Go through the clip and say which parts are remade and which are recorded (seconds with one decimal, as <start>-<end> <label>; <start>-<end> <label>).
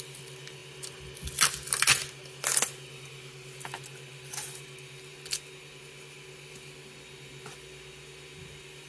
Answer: 0.0-8.9 recorded